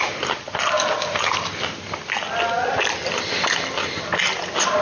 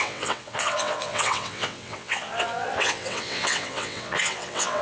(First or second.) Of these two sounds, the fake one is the second